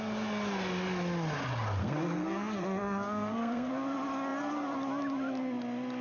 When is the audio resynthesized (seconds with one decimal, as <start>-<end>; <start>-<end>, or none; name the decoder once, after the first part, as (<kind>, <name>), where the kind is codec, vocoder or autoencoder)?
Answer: 1.8-3.7 (codec, SNAC)